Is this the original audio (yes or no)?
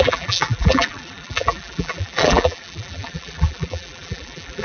no